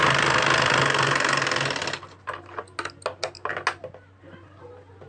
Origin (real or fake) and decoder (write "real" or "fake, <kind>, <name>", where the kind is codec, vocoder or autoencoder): real